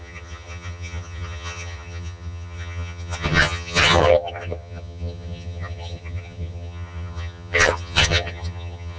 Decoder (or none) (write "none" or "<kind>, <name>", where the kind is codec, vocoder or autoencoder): vocoder, HiFi-GAN